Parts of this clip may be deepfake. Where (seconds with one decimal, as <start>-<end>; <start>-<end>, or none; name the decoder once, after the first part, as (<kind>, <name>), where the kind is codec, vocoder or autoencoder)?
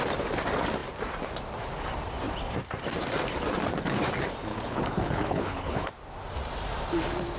4.5-5.9 (codec, HILCodec)